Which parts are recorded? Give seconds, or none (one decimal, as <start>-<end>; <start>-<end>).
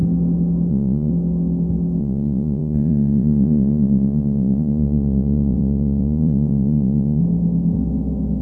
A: 0.0-0.7; 1.1-2.0; 7.2-8.4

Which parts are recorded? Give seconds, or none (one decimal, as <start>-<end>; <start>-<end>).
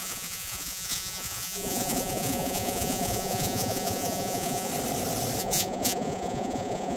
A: 4.7-5.4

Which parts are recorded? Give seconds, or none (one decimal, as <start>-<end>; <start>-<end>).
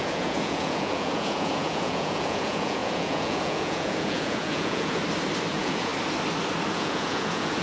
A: 5.0-5.5; 5.9-6.7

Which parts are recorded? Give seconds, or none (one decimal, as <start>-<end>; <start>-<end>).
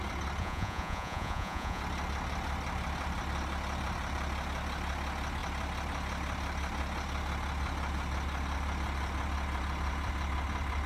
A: 0.0-0.4; 1.8-10.9